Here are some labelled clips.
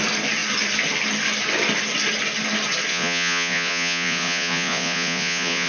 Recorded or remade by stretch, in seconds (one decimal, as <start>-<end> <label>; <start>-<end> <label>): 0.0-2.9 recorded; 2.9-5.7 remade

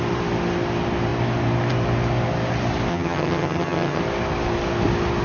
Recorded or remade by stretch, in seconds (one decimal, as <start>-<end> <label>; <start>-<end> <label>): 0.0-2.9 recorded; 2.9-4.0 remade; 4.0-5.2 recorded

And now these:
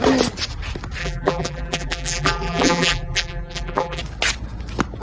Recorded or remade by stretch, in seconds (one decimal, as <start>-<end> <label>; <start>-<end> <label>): 0.0-1.0 recorded; 1.0-4.0 remade; 4.0-5.0 recorded

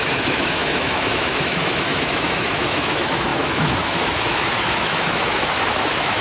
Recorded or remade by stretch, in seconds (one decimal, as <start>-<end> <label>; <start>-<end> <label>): 0.0-6.2 remade

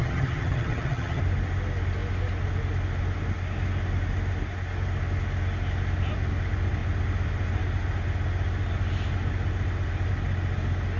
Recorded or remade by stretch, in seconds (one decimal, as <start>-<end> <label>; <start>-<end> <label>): 0.0-1.2 remade; 1.2-11.0 recorded

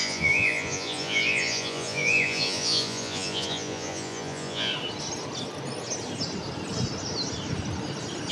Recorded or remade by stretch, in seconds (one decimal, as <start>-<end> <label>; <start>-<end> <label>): 0.0-4.7 remade; 4.7-8.3 recorded

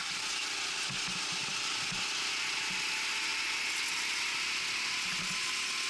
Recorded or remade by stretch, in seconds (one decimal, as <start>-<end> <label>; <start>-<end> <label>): 0.0-5.9 recorded